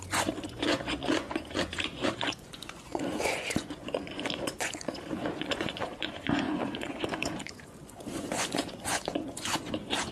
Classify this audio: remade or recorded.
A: remade